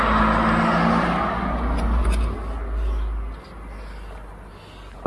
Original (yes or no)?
yes